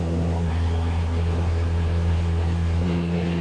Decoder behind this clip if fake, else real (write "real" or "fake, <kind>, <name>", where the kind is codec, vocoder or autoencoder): fake, codec, SNAC